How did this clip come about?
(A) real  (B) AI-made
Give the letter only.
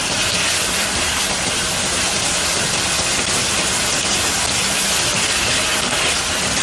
A